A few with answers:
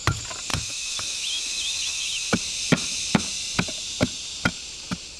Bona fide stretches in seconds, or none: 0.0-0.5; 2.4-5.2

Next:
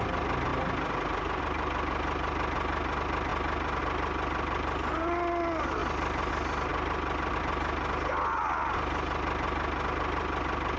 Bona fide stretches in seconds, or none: 0.0-10.8